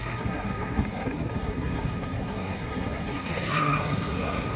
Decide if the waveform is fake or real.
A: fake